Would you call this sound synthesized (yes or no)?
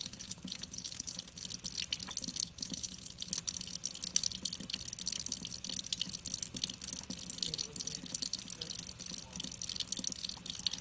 no